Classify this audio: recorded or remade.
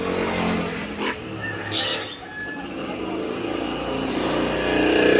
recorded